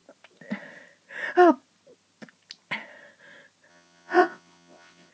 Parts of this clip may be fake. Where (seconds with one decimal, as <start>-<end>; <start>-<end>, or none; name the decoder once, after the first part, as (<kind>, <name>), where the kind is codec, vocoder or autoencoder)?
3.7-5.1 (vocoder, WaveNeXt)